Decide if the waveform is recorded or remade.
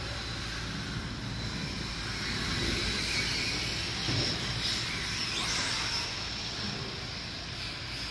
recorded